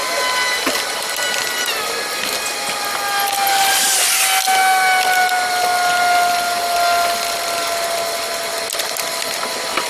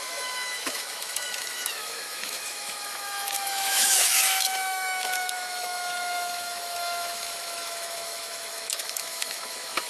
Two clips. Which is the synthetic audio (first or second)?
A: second